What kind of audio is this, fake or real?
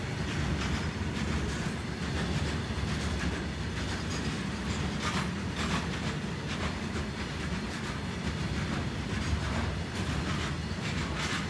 real